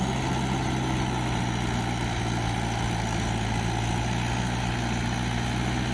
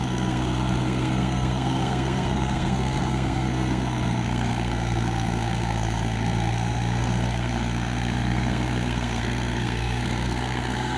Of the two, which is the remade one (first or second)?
second